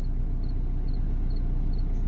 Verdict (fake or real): real